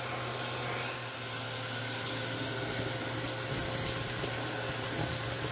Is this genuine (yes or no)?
yes